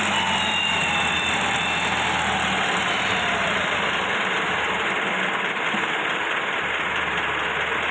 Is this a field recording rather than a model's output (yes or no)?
yes